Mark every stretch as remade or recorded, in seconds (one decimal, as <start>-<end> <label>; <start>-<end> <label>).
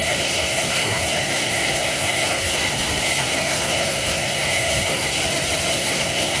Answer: 0.0-5.2 remade; 5.2-5.7 recorded; 5.7-6.4 remade